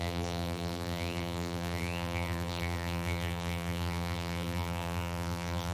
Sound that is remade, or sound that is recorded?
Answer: remade